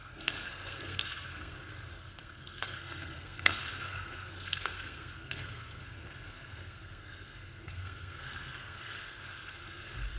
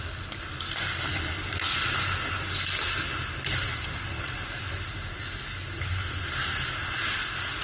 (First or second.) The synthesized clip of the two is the first